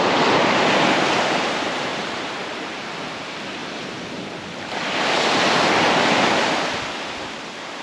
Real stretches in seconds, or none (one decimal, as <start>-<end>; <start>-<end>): 0.0-1.9; 2.9-3.6; 4.3-7.8